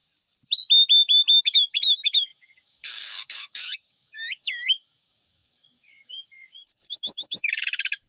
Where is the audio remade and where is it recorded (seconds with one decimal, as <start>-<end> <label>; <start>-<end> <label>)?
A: 0.0-1.4 recorded; 1.4-8.1 remade